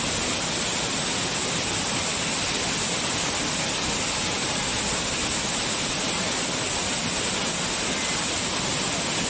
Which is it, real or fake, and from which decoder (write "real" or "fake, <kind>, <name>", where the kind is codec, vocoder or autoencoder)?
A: real